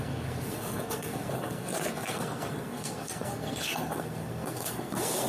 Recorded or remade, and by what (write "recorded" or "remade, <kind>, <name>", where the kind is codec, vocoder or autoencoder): remade, codec, SNAC